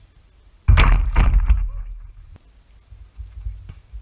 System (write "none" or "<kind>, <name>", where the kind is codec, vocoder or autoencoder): none